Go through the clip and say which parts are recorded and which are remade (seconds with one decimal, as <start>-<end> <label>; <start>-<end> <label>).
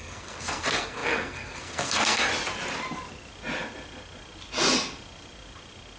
0.0-2.3 remade; 2.3-6.0 recorded